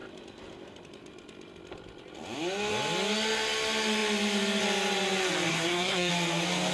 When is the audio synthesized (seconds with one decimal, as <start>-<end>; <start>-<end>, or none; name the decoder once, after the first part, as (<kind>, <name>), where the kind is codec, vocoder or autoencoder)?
5.5-6.1 (codec, SNAC)